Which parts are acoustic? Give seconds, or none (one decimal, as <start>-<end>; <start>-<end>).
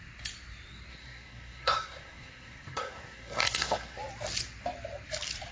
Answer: 0.0-0.9; 4.0-5.5